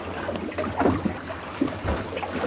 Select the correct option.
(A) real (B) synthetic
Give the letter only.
A